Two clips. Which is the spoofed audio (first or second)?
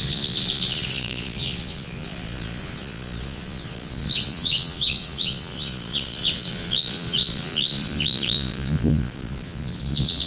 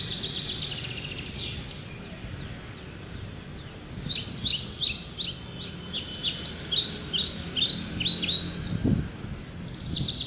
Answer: first